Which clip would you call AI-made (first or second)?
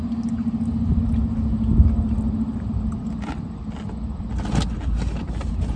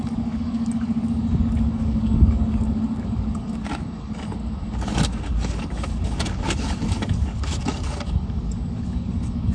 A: second